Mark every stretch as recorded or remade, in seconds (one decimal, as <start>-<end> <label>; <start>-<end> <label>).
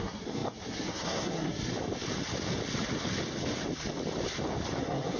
0.0-1.7 remade; 1.7-4.8 recorded; 4.8-5.2 remade